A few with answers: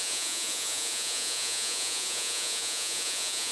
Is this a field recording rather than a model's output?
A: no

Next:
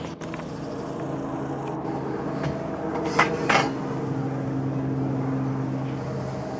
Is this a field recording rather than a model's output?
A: yes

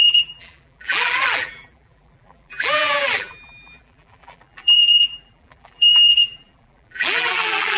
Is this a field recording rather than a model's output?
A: no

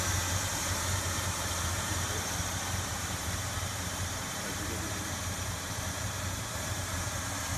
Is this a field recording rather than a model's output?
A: no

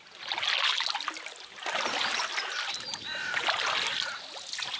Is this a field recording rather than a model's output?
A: yes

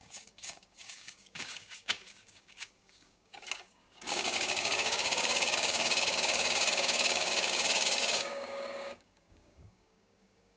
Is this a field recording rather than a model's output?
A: no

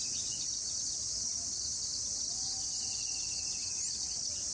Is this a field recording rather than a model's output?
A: yes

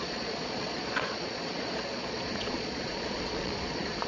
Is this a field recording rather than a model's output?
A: no